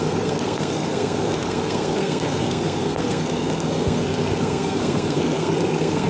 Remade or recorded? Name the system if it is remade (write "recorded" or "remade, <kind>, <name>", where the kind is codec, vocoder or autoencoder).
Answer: remade, codec, SNAC